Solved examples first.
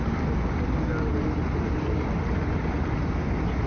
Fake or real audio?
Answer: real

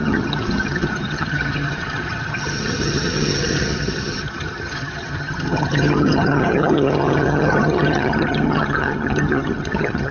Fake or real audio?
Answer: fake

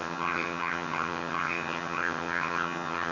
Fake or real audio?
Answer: fake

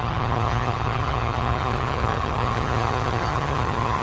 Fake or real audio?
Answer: fake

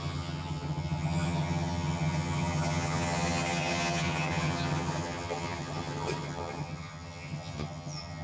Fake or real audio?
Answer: fake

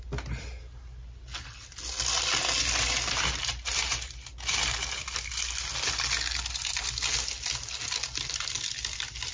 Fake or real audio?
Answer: real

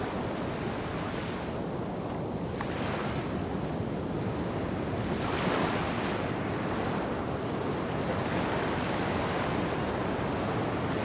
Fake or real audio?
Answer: real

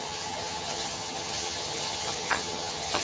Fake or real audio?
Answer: fake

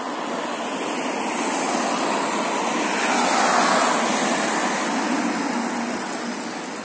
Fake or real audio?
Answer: real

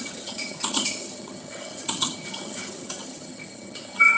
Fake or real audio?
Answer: fake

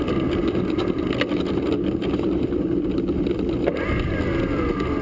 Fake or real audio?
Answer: real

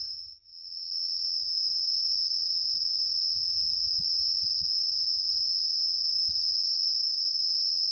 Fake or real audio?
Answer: fake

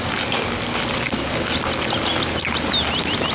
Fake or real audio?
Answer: real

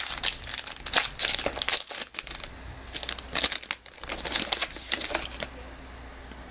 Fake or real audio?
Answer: real